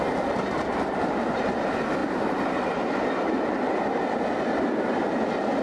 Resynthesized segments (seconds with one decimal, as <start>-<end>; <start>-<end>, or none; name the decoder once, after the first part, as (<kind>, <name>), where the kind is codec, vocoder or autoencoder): 2.0-2.7 (vocoder, BigVGAN v2)